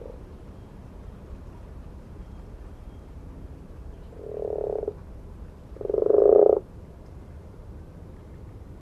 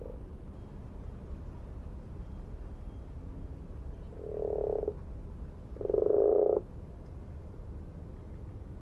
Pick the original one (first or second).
second